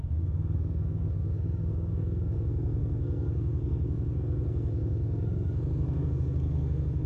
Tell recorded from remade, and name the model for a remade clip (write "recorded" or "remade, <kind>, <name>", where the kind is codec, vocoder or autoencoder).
remade, codec, SNAC